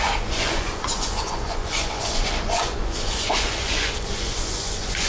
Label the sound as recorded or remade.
remade